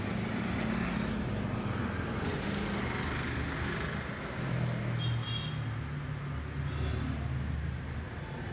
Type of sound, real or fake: real